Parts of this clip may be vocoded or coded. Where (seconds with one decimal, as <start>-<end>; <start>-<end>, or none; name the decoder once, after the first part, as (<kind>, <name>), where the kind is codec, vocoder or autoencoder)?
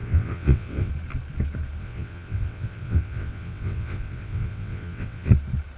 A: 0.0-0.9 (vocoder, WaveNeXt); 1.8-5.3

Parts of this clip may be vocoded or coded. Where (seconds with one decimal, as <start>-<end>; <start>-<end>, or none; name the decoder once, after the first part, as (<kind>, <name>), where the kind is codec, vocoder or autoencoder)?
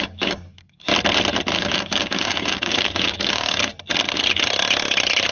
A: 0.0-0.9 (codec, DAC); 1.5-3.7